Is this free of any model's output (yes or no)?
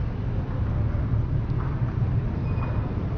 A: yes